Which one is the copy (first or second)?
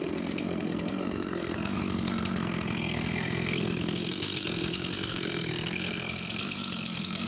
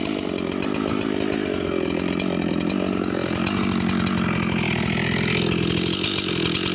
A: first